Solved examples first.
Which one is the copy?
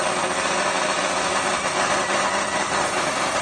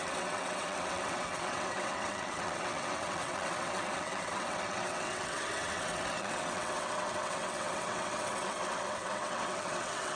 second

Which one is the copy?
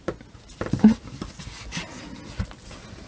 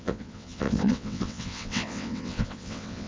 second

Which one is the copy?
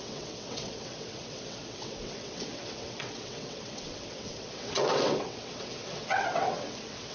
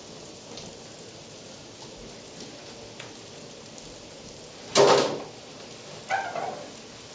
first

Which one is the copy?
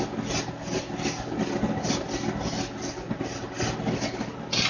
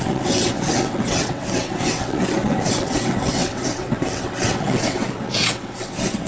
second